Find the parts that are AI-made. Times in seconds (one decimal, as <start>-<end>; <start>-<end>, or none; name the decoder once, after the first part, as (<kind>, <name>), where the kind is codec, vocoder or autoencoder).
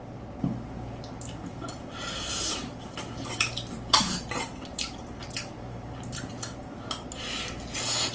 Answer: 1.4-6.3 (vocoder, BigVGAN v2)